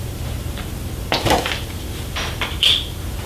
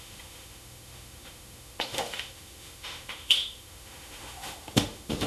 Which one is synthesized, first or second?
second